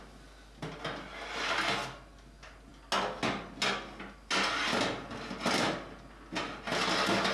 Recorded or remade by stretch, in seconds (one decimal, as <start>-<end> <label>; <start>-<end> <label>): 0.0-7.3 recorded